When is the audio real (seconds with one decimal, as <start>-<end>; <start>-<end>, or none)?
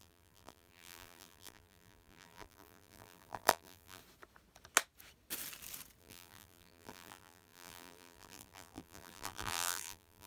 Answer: 4.0-6.0